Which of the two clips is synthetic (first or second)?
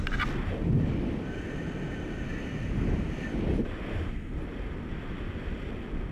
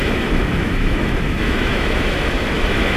second